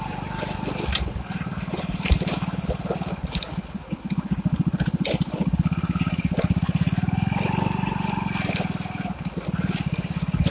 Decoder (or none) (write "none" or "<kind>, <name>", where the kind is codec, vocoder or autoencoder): none